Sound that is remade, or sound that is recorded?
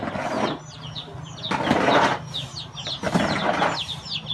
recorded